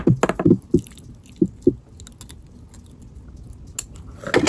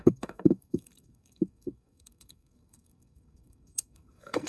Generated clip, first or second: second